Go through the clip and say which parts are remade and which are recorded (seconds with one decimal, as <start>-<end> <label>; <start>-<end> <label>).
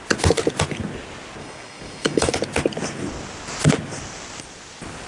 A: 0.0-1.4 recorded; 1.4-2.3 remade; 2.3-5.1 recorded